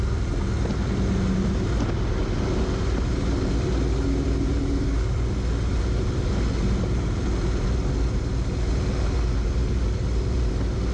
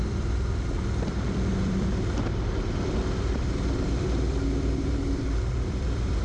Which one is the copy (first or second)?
second